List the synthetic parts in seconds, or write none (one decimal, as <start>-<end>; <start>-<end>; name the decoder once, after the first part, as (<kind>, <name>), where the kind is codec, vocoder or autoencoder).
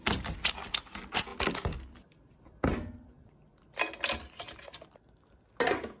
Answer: none